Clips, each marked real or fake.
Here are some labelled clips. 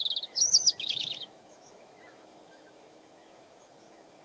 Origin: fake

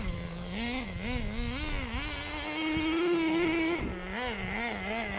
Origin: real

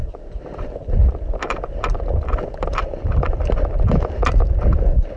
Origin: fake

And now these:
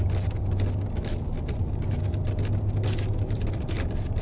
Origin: real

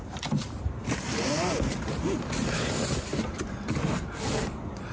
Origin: fake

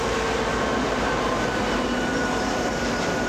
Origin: fake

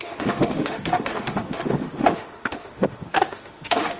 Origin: fake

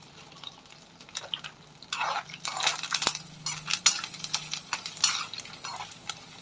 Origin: real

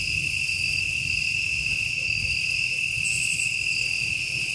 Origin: real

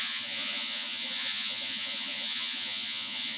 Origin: fake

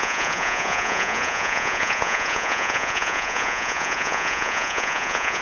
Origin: fake